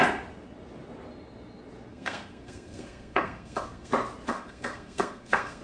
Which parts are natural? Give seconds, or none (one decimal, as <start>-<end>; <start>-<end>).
0.0-1.9; 3.9-4.3